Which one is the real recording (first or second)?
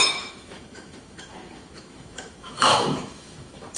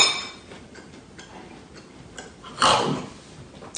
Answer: second